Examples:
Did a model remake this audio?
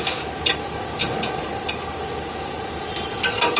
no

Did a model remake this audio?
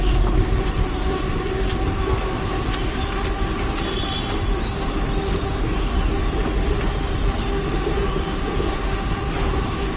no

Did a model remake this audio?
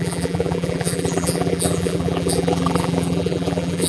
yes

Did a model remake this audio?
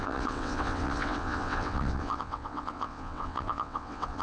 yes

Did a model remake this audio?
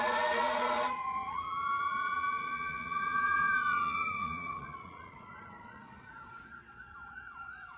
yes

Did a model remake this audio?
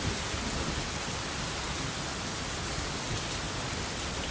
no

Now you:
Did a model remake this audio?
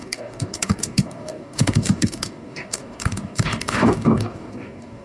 yes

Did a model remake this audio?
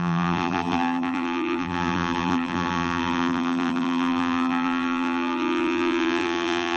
yes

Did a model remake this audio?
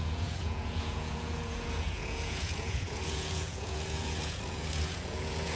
yes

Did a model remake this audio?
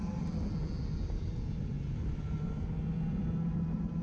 no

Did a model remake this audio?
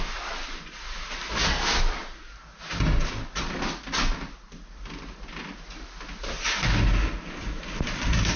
no